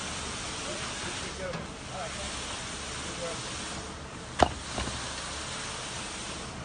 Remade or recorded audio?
recorded